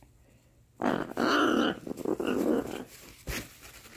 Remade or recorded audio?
recorded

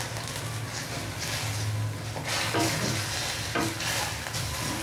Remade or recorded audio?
recorded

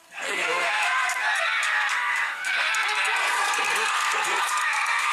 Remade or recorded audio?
remade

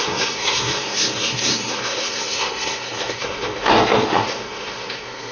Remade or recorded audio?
remade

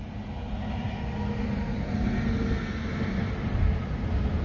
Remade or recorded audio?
recorded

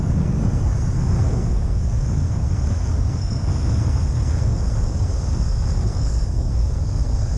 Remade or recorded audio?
remade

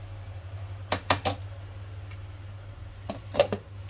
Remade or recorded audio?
recorded